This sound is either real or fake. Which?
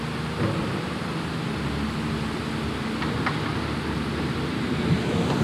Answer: real